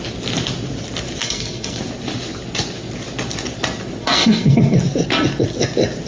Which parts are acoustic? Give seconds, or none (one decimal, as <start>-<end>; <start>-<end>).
0.0-1.2; 1.8-4.0; 4.8-6.1